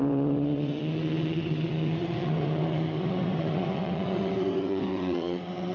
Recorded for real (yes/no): no